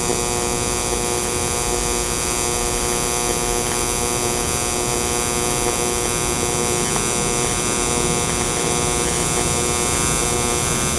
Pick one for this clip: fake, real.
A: real